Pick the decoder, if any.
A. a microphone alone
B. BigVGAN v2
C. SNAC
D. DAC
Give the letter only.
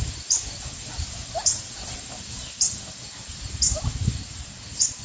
B